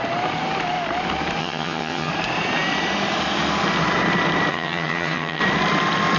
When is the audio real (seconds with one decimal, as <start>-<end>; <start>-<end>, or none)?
0.0-1.4; 2.1-4.5; 5.4-6.2

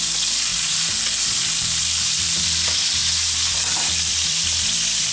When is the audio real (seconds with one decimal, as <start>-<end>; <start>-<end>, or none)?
0.5-1.5; 3.0-4.1